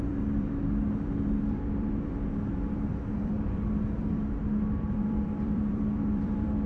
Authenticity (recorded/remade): remade